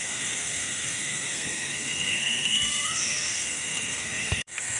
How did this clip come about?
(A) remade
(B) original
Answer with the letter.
A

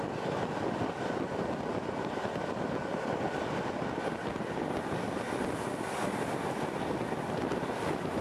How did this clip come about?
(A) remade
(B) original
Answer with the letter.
B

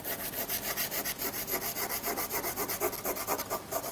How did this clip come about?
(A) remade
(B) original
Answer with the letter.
B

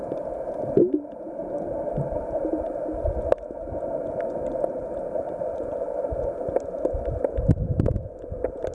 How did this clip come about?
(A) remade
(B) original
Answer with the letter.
B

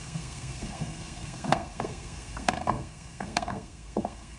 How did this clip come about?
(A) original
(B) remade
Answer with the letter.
B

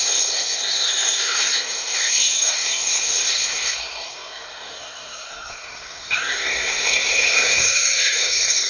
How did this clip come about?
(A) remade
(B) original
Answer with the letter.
A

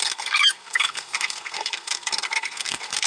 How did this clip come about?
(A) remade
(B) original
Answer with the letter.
A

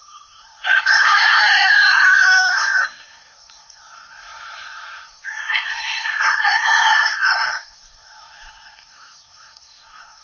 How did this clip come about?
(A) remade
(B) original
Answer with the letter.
A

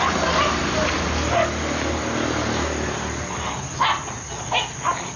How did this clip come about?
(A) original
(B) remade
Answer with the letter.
A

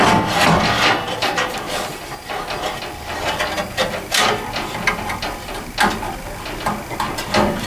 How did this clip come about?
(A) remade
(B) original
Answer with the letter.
B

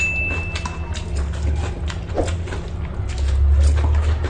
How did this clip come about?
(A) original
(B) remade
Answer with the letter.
A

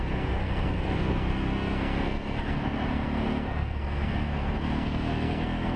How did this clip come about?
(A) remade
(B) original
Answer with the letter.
A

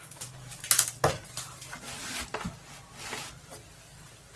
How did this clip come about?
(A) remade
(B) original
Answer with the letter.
B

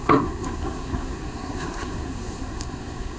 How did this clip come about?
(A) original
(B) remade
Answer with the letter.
B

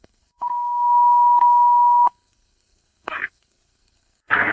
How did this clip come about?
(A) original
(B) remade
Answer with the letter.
B